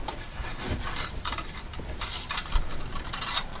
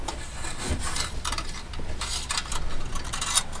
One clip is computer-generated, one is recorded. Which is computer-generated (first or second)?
first